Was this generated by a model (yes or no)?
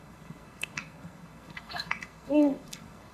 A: yes